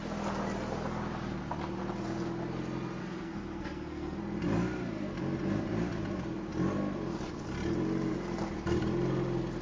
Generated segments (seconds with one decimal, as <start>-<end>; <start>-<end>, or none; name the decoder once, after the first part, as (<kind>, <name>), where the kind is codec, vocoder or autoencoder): 3.0-4.2 (codec, SNAC)